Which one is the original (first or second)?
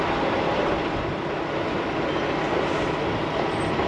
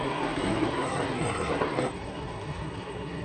first